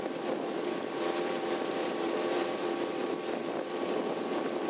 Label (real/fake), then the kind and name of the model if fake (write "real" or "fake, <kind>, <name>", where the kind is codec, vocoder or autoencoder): fake, vocoder, BigVGAN v2